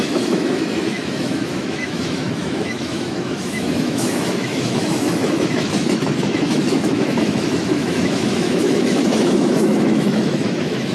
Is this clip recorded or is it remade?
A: remade